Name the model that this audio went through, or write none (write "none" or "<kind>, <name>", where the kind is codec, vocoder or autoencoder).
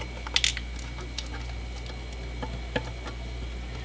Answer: none